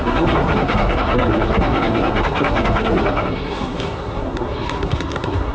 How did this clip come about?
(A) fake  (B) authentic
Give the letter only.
A